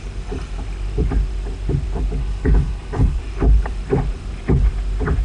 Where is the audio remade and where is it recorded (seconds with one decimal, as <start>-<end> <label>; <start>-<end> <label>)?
0.0-2.2 recorded; 2.2-3.2 remade; 3.2-5.2 recorded